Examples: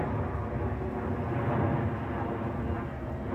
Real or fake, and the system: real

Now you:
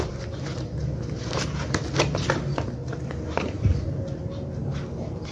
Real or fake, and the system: real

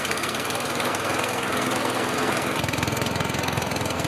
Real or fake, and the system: fake, codec, SNAC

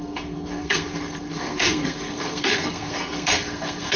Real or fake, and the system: fake, codec, SNAC